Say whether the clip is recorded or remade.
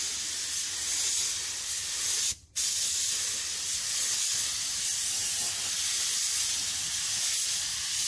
recorded